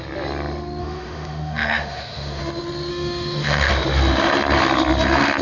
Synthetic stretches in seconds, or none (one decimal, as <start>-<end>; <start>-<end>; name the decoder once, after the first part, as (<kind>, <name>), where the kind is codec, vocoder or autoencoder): 0.8-2.4 (autoencoder, DAC-VAE); 2.9-3.7